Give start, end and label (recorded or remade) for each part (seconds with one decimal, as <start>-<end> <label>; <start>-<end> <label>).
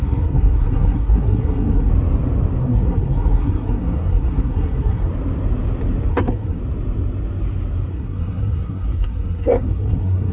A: 0.0-1.9 remade; 1.9-2.6 recorded; 2.6-5.1 remade; 5.1-6.1 recorded; 6.1-6.6 remade; 6.6-7.9 recorded; 7.9-10.3 remade